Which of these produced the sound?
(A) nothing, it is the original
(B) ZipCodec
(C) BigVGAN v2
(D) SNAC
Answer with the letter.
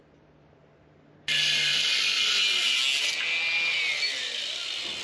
A